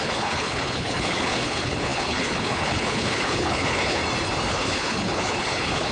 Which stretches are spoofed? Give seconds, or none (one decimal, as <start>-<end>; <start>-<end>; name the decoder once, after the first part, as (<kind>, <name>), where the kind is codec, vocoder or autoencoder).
0.0-4.0 (codec, HILCodec); 4.5-5.9